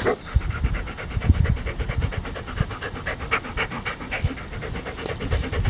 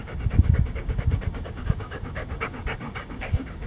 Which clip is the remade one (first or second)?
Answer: second